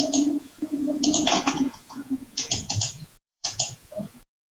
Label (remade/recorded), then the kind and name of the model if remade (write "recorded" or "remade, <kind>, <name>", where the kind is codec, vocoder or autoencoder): remade, vocoder, Vocos